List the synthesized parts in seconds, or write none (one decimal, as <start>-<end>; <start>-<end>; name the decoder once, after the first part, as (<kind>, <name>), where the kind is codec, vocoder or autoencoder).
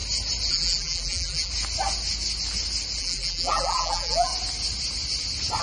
0.5-1.5 (vocoder, BigVGAN v2); 3.0-4.3